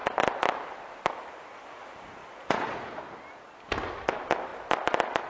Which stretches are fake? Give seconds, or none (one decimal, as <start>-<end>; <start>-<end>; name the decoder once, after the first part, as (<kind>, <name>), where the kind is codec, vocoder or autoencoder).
2.2-3.0 (vocoder, Vocos)